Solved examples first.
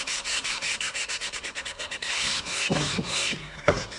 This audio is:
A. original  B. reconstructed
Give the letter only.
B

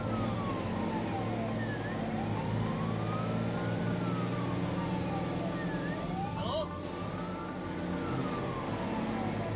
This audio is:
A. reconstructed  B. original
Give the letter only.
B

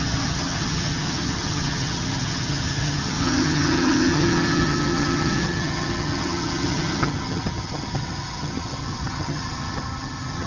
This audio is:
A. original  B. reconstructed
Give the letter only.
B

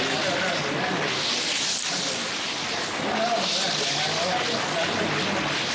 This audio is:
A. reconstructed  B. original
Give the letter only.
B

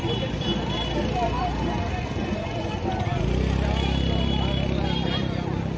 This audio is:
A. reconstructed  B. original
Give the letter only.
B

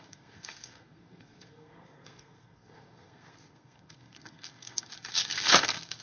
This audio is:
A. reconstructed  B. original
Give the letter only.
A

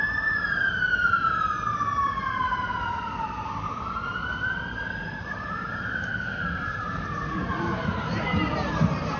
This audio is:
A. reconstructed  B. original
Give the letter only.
A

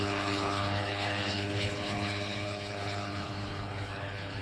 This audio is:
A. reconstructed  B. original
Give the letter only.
A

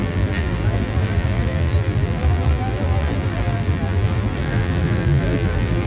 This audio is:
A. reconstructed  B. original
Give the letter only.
A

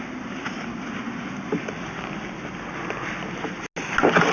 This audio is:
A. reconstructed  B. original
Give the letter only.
B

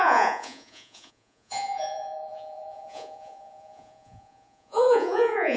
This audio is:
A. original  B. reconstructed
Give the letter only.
B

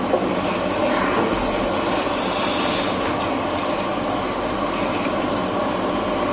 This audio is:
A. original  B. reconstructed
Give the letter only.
A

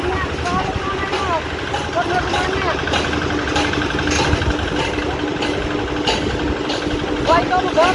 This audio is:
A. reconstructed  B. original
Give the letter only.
B